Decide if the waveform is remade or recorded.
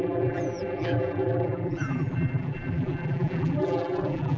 remade